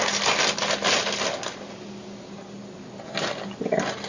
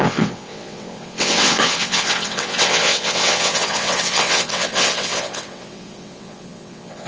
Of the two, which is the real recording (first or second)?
first